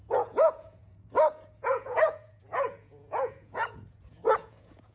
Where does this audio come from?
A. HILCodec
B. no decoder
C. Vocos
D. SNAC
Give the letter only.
C